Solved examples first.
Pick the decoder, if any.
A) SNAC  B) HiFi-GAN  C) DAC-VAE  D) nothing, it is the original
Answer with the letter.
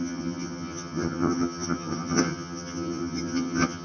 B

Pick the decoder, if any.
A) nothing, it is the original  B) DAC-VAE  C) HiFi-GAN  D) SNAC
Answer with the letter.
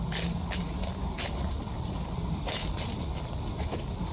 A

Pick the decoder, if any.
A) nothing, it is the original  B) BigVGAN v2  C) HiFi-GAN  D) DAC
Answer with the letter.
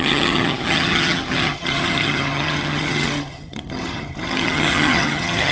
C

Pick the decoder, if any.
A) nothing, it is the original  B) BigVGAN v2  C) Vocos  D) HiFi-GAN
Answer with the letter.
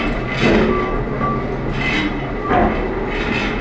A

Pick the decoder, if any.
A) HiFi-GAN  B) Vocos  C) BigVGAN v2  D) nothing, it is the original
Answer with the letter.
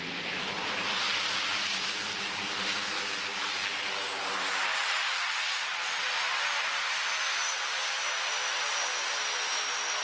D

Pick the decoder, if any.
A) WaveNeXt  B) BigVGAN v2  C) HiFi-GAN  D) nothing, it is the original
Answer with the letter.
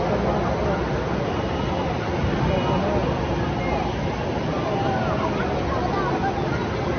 D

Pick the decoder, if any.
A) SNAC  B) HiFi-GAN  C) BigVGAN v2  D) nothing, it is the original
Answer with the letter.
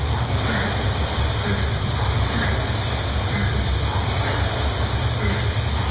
D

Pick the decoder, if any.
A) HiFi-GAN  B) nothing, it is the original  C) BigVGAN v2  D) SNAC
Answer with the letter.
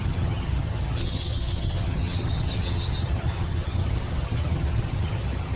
A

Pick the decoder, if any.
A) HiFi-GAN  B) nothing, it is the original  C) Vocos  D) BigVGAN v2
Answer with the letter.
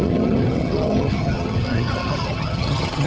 A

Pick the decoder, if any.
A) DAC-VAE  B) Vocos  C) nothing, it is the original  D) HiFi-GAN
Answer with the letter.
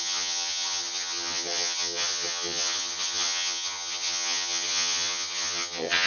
D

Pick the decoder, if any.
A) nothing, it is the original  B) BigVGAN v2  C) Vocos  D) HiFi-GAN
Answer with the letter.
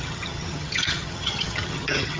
D